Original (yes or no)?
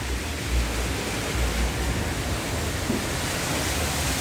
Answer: yes